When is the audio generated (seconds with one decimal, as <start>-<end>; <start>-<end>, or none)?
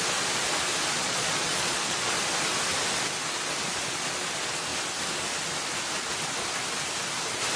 1.0-2.1